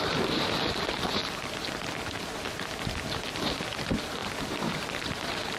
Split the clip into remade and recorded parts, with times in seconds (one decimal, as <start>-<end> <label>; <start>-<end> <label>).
0.0-5.6 recorded

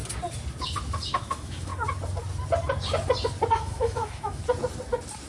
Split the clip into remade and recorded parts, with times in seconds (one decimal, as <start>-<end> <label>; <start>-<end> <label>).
0.0-1.1 recorded; 1.1-1.7 remade; 1.7-3.5 recorded; 3.5-4.4 remade; 4.4-5.3 recorded

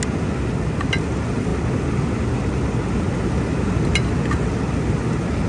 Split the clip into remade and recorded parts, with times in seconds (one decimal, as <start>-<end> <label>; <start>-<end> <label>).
0.0-5.5 recorded

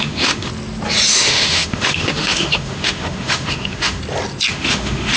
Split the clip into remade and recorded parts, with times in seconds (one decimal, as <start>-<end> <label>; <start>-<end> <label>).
0.0-0.5 remade; 0.5-1.1 recorded; 1.1-4.0 remade; 4.0-4.5 recorded; 4.5-5.2 remade

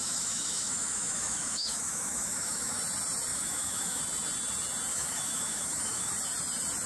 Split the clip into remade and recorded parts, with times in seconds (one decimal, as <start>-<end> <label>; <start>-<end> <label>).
0.0-2.8 remade; 2.8-3.3 recorded; 3.3-4.0 remade; 4.0-4.9 recorded; 4.9-6.1 remade; 6.1-6.9 recorded

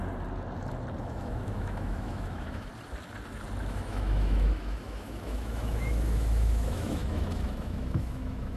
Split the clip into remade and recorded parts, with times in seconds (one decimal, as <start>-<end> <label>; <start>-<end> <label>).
0.0-1.0 recorded; 1.0-2.7 remade; 2.7-3.6 recorded; 3.6-8.6 remade

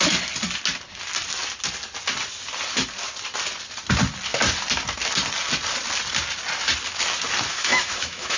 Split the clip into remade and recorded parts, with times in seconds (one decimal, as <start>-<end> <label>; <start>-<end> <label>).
0.0-7.5 recorded; 7.5-8.4 remade